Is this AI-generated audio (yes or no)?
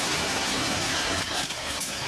yes